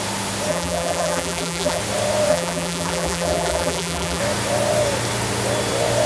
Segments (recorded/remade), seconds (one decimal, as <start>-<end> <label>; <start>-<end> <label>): 0.0-0.5 recorded; 0.5-1.8 remade; 1.8-2.3 recorded; 2.3-4.2 remade; 4.2-6.1 recorded